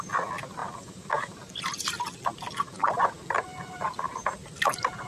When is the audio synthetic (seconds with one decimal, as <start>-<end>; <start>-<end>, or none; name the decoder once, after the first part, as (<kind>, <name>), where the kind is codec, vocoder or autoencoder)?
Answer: none